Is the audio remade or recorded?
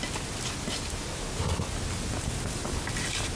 recorded